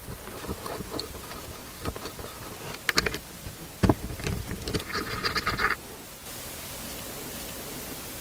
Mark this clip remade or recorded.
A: recorded